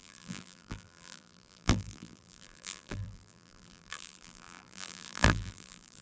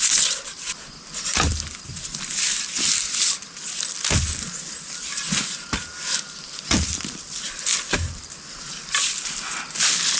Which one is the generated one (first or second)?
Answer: first